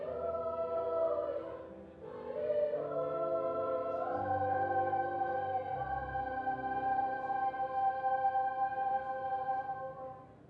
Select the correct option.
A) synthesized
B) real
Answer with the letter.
B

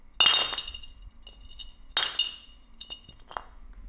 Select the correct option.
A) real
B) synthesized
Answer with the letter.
A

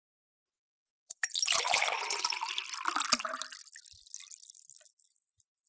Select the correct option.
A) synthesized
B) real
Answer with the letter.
B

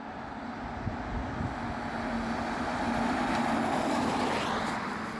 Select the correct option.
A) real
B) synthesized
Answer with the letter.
A